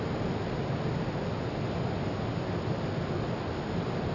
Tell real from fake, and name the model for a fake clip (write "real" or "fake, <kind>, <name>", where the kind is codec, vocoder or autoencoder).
real